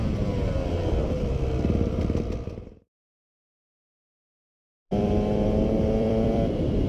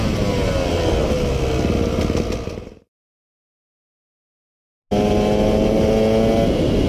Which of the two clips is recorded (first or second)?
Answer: second